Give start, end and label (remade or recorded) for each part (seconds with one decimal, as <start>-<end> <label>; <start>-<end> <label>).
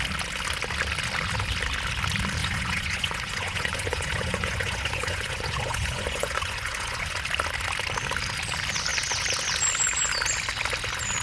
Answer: 0.0-2.4 recorded; 2.4-7.2 remade; 7.2-11.2 recorded